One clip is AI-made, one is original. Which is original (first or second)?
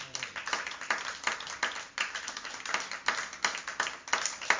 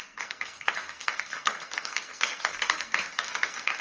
first